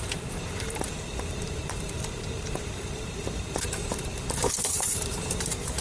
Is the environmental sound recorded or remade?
remade